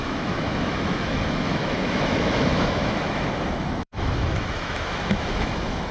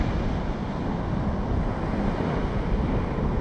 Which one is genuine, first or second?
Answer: second